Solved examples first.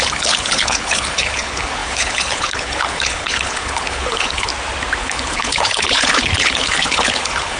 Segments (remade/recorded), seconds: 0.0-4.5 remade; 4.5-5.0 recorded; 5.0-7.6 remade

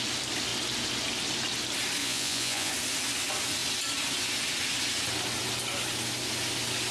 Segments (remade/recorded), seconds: 0.0-2.0 recorded; 2.0-2.7 remade; 2.7-6.9 recorded

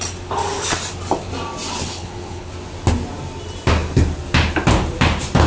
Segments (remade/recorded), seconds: 0.0-1.8 recorded; 1.8-2.5 remade; 2.5-5.5 recorded

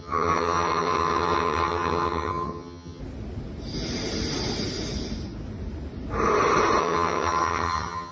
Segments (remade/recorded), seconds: 0.0-3.0 remade; 3.0-6.8 recorded; 6.8-8.1 remade

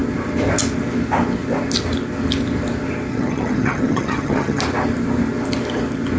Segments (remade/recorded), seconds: 0.0-3.1 recorded; 3.1-4.6 remade; 4.6-6.2 recorded

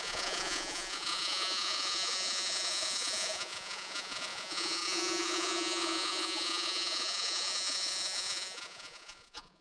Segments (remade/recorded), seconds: 0.0-9.6 remade

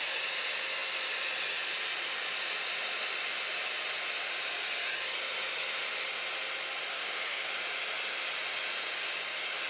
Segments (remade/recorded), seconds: 0.0-6.9 recorded; 6.9-7.5 remade; 7.5-9.7 recorded

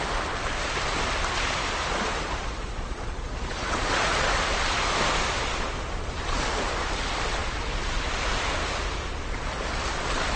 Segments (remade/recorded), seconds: 0.0-1.8 recorded; 1.8-4.3 remade; 4.3-10.4 recorded